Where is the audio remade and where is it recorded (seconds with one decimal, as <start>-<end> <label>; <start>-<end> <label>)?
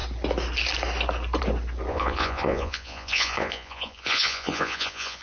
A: 0.0-1.9 recorded; 1.9-5.2 remade